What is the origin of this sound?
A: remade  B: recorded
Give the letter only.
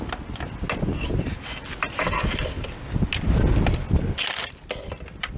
B